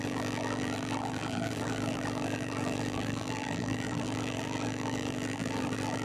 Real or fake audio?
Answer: fake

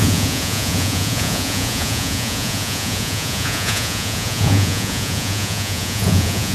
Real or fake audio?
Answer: fake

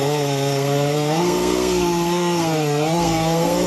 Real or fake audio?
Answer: fake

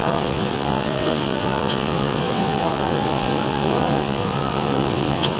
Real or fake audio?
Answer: fake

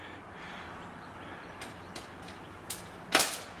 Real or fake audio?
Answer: real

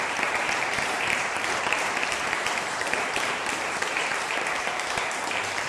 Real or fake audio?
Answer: fake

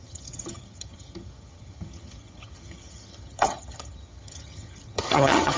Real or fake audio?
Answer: fake